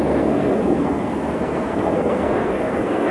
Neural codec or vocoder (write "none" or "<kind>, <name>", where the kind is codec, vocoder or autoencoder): codec, SNAC